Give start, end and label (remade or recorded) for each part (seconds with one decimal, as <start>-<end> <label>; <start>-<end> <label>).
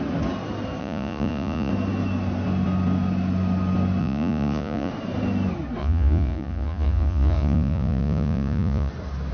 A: 0.0-0.8 recorded; 0.8-1.7 remade; 1.7-4.0 recorded; 4.0-4.9 remade; 4.9-5.8 recorded; 5.8-8.9 remade; 8.9-9.3 recorded